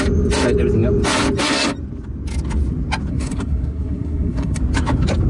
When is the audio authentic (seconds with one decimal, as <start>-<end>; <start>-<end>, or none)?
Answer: 0.0-3.1; 4.6-5.3